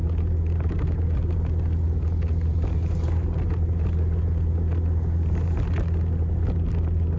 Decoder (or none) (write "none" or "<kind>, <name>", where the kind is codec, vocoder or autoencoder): none